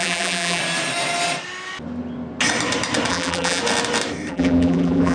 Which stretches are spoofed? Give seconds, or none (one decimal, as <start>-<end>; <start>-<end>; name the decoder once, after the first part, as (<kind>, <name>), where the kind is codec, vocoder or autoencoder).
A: 0.0-0.6 (vocoder, BigVGAN v2); 3.1-3.6; 4.3-5.1